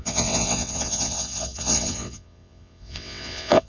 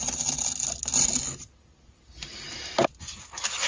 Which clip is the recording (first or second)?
second